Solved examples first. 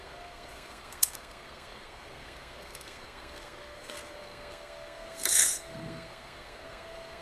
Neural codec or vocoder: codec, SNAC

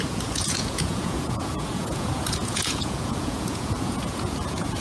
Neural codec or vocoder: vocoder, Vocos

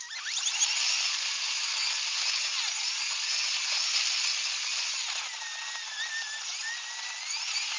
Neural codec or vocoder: none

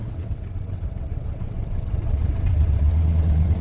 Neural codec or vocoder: vocoder, WaveNeXt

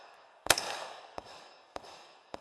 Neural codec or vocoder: codec, DAC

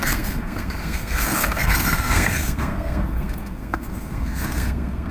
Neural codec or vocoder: codec, SNAC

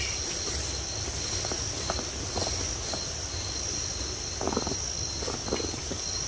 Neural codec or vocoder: none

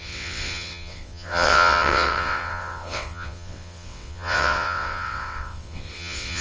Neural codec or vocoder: vocoder, WaveNeXt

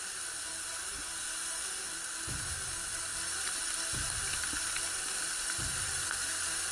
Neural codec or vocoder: vocoder, BigVGAN v2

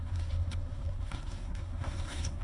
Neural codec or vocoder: codec, SNAC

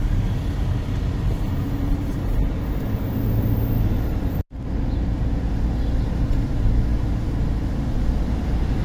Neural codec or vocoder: none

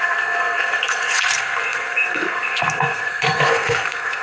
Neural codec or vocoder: codec, SNAC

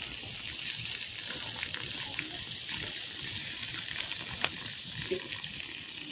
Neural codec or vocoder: none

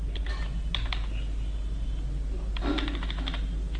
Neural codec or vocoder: none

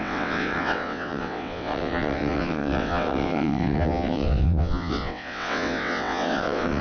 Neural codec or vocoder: vocoder, WaveNeXt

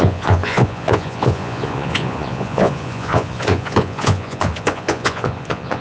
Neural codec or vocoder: vocoder, Vocos